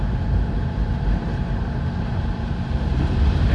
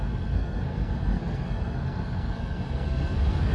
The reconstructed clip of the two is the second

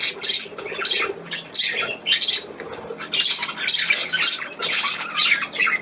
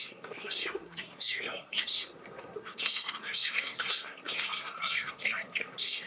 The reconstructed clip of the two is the second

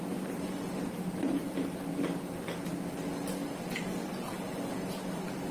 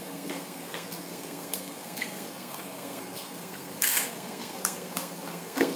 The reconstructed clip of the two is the second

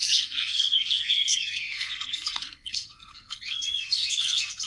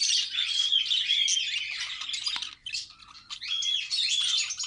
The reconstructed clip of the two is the first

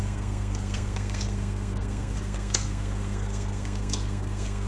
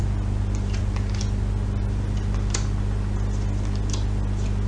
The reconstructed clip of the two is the first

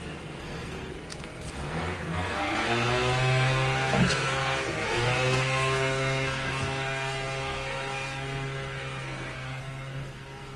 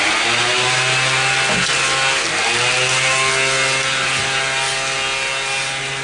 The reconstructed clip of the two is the first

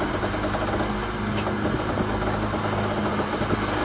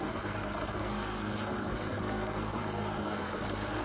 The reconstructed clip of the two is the second